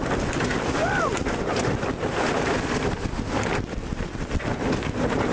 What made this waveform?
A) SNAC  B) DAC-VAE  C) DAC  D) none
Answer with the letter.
D